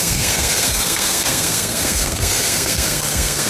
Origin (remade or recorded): remade